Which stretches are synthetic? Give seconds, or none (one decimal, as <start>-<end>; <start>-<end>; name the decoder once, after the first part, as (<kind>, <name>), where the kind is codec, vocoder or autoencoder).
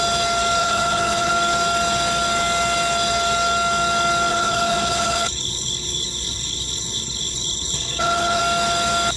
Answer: 0.6-1.3 (codec, HILCodec); 4.3-8.4